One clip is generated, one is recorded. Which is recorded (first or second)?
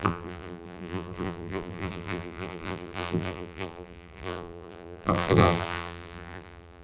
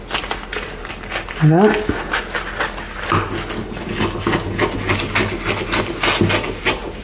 second